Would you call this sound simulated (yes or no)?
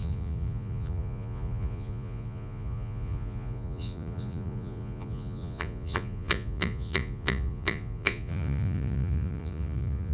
yes